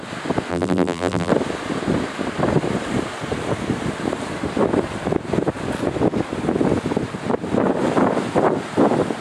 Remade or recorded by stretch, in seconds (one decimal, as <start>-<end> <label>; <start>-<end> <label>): 0.0-0.5 recorded; 0.5-1.3 remade; 1.3-9.2 recorded